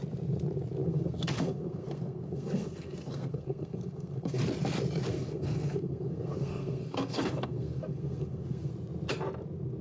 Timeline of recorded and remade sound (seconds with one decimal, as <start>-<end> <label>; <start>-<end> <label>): 0.0-0.8 recorded; 0.8-4.4 remade; 4.4-5.1 recorded; 5.1-8.7 remade; 8.7-9.8 recorded

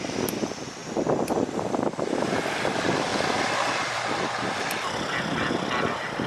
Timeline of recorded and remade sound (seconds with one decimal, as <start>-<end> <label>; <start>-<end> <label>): 0.0-6.3 recorded

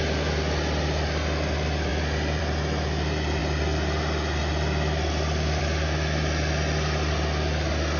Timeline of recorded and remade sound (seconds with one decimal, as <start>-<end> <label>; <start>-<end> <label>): 0.0-8.0 recorded

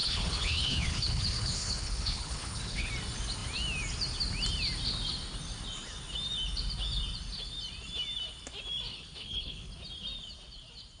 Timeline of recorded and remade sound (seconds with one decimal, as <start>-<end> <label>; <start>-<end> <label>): 0.0-2.9 remade; 2.9-8.9 recorded; 8.9-9.7 remade; 9.7-11.0 recorded

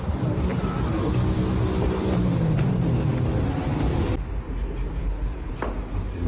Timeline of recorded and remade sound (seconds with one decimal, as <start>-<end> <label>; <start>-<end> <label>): 0.0-5.0 recorded; 5.0-5.5 remade; 5.5-6.3 recorded

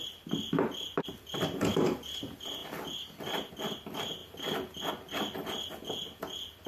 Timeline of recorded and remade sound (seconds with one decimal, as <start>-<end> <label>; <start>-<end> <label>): 0.0-6.7 recorded